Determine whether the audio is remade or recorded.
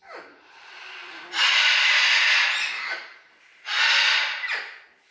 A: recorded